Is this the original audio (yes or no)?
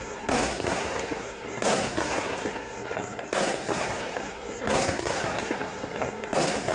no